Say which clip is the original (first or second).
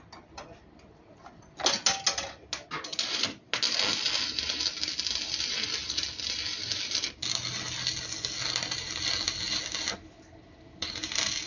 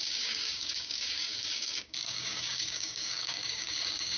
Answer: first